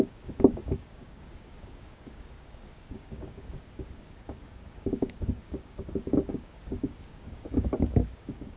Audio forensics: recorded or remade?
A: remade